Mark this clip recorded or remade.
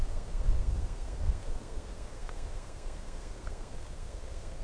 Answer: remade